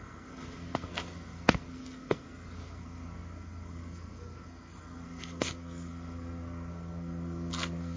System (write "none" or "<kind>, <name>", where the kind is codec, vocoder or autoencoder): codec, SNAC